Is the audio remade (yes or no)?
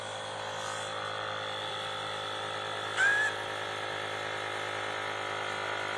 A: no